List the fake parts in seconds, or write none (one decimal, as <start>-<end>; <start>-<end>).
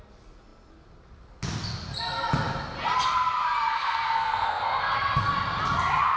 3.7-5.3